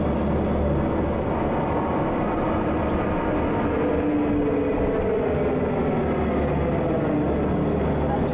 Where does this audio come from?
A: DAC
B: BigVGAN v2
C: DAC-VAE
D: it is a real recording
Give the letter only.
D